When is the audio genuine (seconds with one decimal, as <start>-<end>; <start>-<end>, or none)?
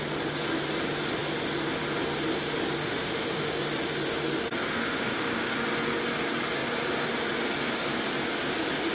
0.0-2.8; 3.5-4.7; 5.5-8.9